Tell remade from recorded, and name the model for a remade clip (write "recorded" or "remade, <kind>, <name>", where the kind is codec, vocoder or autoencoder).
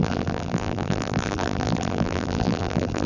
remade, vocoder, BigVGAN v2